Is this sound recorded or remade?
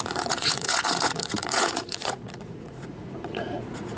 remade